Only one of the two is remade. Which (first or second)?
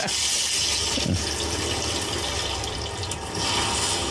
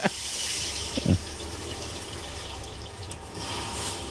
second